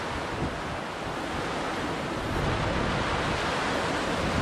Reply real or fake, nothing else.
real